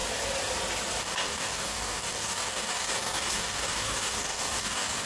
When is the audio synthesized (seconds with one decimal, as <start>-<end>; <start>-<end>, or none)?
1.0-5.0